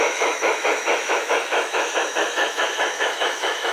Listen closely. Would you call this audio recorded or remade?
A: remade